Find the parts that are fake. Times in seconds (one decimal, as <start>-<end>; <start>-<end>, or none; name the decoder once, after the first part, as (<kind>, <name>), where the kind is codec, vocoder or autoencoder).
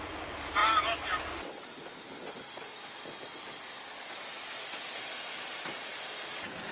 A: none